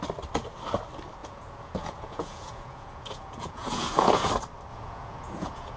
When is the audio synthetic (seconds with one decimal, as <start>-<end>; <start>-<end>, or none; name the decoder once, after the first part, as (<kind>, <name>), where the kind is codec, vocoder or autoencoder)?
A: 1.2-4.3 (vocoder, Vocos); 4.7-5.8